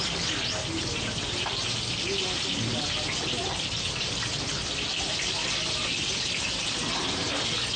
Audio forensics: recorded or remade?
recorded